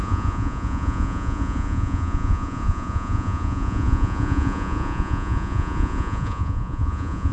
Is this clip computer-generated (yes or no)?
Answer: yes